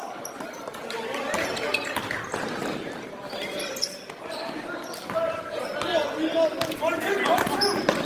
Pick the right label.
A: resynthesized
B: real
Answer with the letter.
B